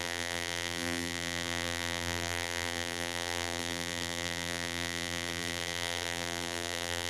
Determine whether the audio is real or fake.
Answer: fake